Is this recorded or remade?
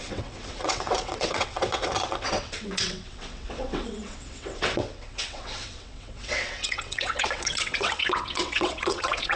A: remade